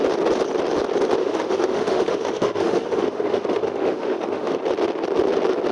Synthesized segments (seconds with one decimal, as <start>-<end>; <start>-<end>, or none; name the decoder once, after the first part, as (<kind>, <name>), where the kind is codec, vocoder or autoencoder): 1.2-4.6 (autoencoder, DAC-VAE)